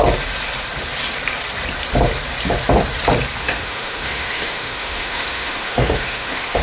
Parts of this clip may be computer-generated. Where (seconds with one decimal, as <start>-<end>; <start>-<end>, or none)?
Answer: 3.4-6.6